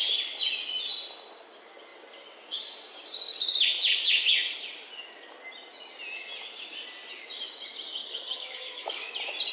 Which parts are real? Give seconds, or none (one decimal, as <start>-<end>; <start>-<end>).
0.0-8.0; 9.1-9.5